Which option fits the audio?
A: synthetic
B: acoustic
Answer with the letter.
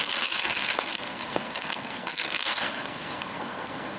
A